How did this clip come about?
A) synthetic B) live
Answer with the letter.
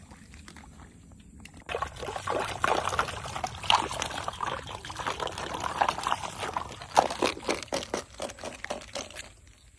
B